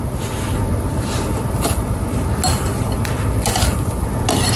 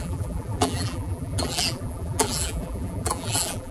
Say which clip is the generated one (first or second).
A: second